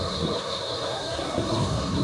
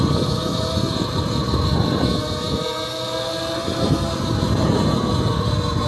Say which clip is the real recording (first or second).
second